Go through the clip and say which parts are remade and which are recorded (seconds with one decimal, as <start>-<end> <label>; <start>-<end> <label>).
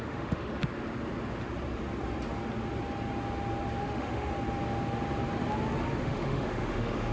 0.0-0.5 remade; 0.5-3.8 recorded; 3.8-4.3 remade; 4.3-6.0 recorded; 6.0-7.1 remade